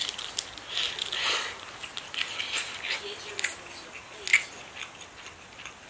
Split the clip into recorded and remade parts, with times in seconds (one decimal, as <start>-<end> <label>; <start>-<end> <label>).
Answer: 0.0-5.9 recorded